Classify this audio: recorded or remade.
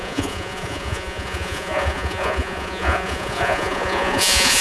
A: remade